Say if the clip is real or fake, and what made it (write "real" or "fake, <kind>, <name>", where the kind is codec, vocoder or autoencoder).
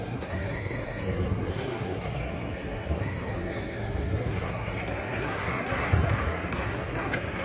fake, codec, SNAC